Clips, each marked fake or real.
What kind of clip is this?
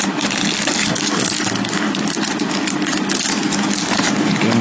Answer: real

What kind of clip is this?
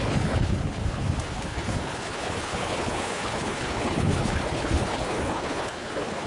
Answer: fake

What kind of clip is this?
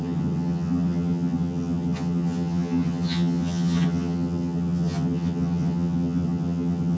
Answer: fake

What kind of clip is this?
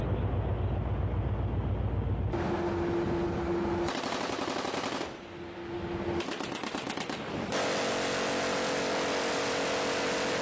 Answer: real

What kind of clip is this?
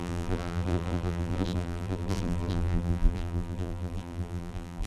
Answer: fake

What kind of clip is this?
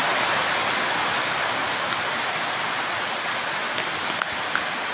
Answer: real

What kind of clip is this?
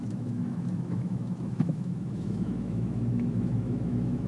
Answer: fake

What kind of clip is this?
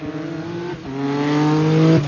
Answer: real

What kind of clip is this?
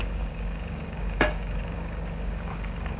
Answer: fake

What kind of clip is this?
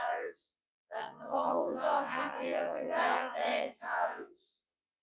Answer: fake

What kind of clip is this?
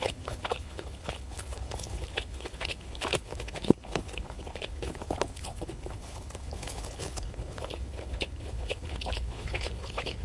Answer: fake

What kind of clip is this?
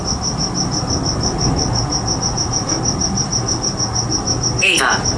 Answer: real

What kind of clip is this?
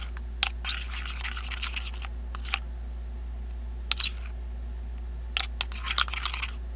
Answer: real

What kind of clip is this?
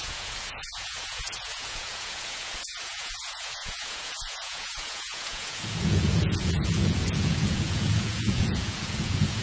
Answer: fake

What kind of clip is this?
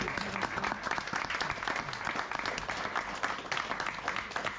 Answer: real